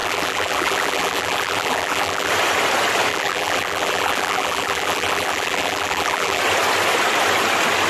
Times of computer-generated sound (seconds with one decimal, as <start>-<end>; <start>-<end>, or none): 0.0-2.3; 3.1-6.4